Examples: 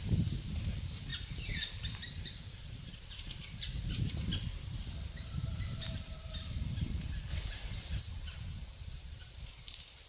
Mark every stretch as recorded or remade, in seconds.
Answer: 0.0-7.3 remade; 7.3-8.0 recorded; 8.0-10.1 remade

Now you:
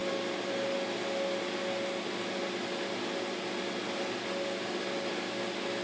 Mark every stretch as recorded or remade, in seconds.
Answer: 0.0-5.8 recorded

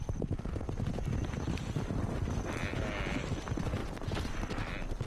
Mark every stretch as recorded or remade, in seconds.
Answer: 0.0-5.1 recorded

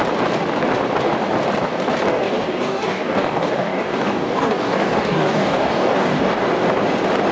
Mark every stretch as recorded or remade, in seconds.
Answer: 0.0-2.1 recorded; 2.1-6.5 remade; 6.5-7.3 recorded

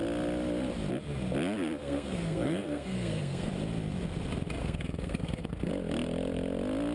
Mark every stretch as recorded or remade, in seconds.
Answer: 0.0-1.8 recorded; 1.8-3.5 remade; 3.5-4.6 recorded; 4.6-5.7 remade; 5.7-6.9 recorded

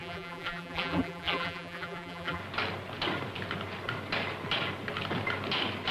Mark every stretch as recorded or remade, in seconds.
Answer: 0.0-2.4 remade; 2.4-5.9 recorded